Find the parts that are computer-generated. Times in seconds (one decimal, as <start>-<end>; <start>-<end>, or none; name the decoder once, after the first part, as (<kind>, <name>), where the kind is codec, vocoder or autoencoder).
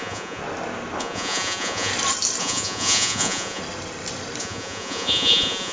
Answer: 0.0-0.4 (vocoder, Vocos); 1.0-1.9; 2.4-3.6; 4.4-5.7